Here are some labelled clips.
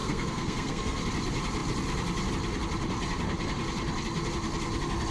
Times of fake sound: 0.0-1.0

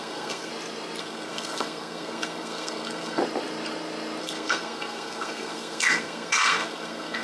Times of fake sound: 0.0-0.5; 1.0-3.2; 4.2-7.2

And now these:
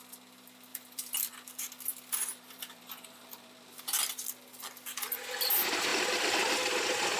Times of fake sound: 0.7-1.3; 1.9-4.3; 5.9-6.6